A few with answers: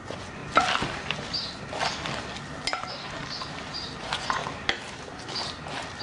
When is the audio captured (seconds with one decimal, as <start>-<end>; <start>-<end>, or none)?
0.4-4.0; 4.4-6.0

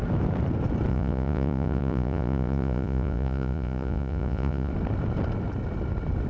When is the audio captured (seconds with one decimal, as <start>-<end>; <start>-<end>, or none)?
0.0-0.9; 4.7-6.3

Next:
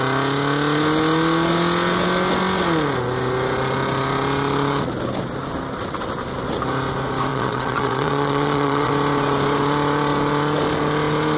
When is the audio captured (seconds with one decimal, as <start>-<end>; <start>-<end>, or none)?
0.0-7.3; 8.9-11.4

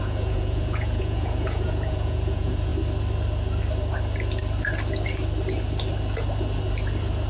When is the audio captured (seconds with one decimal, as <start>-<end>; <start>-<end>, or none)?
2.7-7.3

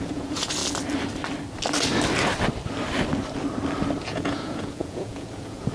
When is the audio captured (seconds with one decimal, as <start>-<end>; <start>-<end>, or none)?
0.6-4.0

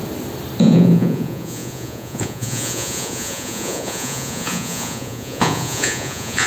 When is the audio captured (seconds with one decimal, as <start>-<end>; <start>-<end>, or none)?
0.0-0.6

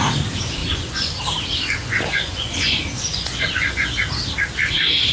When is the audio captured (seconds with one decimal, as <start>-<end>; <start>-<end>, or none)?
0.0-0.6; 1.2-1.8; 4.0-5.1

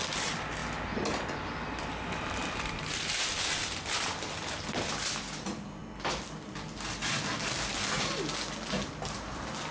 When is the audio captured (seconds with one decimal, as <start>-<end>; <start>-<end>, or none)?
0.0-9.7